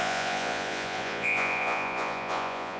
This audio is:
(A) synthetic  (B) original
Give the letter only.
A